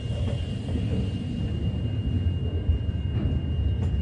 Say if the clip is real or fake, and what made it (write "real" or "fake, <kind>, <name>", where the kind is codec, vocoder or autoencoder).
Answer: real